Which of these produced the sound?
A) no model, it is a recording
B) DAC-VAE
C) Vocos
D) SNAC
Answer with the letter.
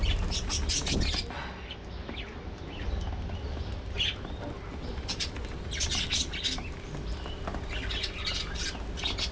A